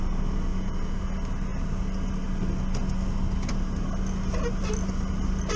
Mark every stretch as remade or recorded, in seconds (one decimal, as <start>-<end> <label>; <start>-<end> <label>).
0.0-0.5 recorded; 0.5-1.0 remade; 1.0-5.6 recorded